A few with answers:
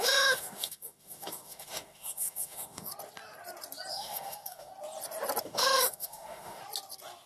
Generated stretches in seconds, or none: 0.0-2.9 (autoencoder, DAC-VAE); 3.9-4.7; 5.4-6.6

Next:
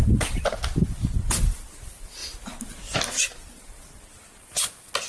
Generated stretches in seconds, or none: none

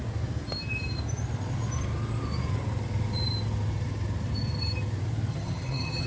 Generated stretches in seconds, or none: 5.3-6.1 (vocoder, HiFi-GAN)

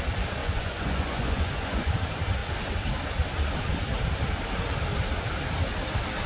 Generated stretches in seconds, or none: 0.4-1.9 (vocoder, Vocos)

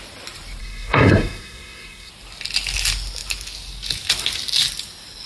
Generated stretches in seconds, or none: 0.6-2.1 (codec, SNAC)

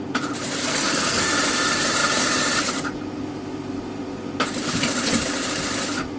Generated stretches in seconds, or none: 0.6-1.3 (codec, SNAC)

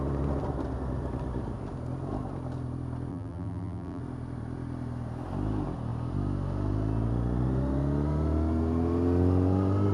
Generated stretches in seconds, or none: 3.1-4.0 (vocoder, BigVGAN v2)

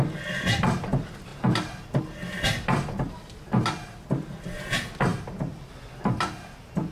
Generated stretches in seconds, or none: none